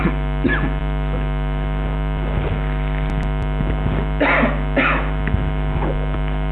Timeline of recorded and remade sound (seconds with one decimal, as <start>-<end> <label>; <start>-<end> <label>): 0.0-6.5 recorded